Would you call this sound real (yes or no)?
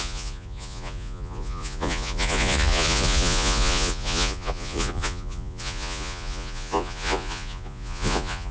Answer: no